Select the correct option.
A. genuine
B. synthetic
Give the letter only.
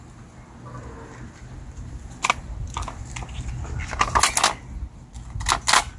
A